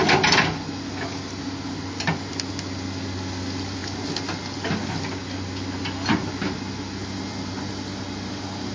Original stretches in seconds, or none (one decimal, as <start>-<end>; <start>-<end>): 0.0-8.7